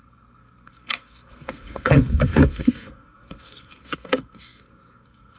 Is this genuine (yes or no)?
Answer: no